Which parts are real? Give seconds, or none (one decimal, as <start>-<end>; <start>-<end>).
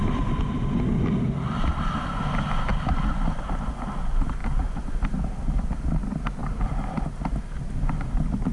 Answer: 0.0-2.7; 3.6-4.4; 5.9-8.5